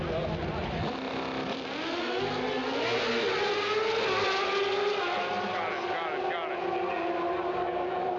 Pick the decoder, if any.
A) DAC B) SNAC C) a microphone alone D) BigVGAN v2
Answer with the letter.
C